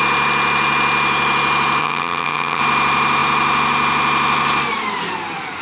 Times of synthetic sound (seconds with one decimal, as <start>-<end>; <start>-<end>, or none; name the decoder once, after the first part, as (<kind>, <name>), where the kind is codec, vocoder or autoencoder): 1.8-2.6 (vocoder, HiFi-GAN)